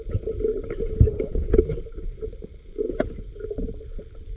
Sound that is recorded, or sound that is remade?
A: recorded